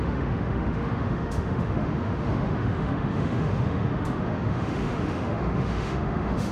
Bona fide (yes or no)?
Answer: no